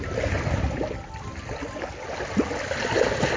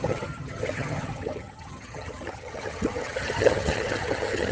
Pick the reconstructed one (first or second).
second